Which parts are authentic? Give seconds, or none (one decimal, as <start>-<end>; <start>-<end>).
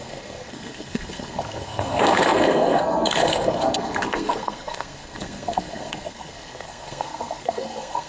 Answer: none